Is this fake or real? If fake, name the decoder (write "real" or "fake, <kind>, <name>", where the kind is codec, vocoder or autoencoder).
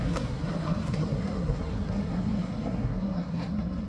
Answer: fake, codec, SNAC